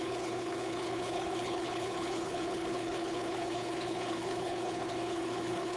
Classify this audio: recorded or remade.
remade